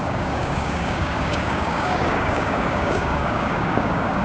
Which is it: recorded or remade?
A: remade